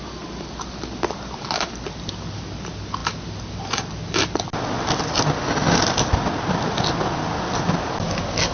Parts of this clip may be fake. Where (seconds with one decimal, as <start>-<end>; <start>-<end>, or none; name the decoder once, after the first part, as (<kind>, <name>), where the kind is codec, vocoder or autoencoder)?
none